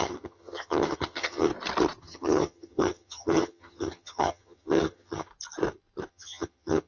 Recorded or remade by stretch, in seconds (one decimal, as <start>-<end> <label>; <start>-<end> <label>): 0.0-1.5 remade; 1.5-2.0 recorded; 2.0-5.3 remade; 5.3-6.1 recorded; 6.1-6.9 remade